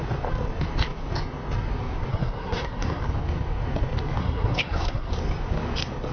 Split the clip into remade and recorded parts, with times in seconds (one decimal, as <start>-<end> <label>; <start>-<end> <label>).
0.0-2.1 recorded; 2.1-3.0 remade; 3.0-4.2 recorded; 4.2-5.1 remade; 5.1-6.1 recorded